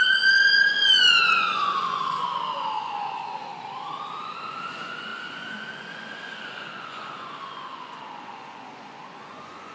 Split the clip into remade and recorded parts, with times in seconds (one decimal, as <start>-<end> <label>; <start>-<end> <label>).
0.0-3.5 remade; 3.5-4.2 recorded; 4.2-9.7 remade